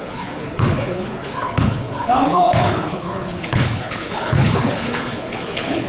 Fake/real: fake